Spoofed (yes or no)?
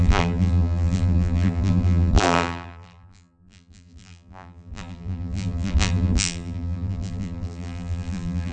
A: yes